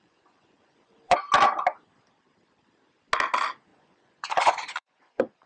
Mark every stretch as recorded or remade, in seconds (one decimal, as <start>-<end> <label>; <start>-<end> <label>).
0.0-1.2 remade; 1.2-3.7 recorded; 3.7-5.5 remade